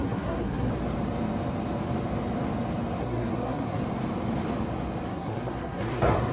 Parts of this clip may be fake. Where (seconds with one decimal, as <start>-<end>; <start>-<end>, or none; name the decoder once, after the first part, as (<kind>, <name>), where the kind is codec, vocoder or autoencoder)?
0.0-0.7 (codec, SNAC); 3.0-3.8; 5.1-6.3